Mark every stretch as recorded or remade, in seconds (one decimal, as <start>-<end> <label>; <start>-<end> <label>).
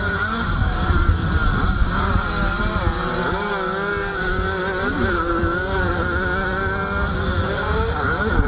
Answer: 0.0-8.5 recorded